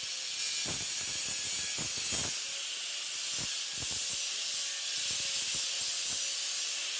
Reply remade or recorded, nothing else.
recorded